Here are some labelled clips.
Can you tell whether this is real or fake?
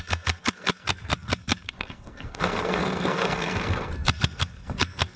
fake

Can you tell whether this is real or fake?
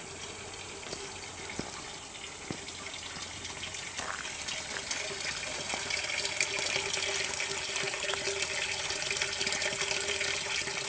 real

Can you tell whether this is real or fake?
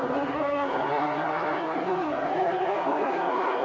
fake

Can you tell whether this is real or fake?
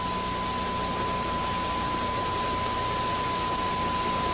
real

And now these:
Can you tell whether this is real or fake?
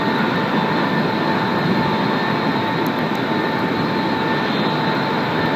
real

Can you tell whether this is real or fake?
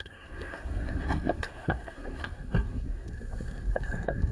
fake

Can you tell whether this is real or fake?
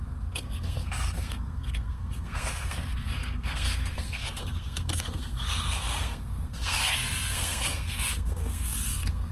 fake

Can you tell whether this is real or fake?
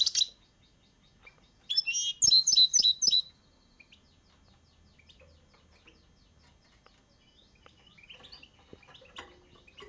real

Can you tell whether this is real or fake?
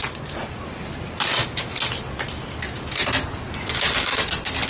real